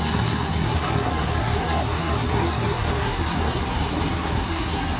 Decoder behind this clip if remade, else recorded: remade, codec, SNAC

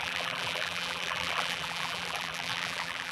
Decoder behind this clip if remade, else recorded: remade, vocoder, BigVGAN v2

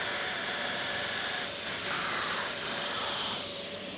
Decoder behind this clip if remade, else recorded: remade, vocoder, BigVGAN v2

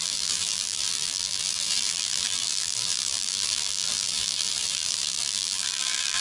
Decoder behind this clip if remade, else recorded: remade, vocoder, BigVGAN v2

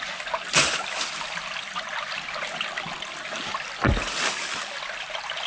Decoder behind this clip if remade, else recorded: recorded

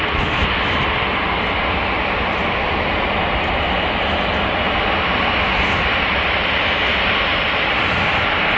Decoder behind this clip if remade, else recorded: recorded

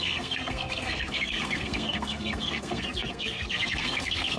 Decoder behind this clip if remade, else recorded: remade, codec, SNAC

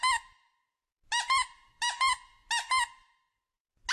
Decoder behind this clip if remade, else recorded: recorded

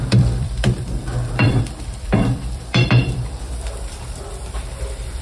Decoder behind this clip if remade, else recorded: remade, vocoder, BigVGAN v2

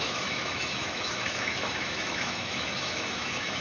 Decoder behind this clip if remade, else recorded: remade, autoencoder, DAC-VAE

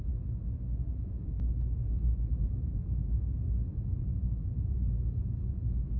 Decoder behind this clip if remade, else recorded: remade, autoencoder, DAC-VAE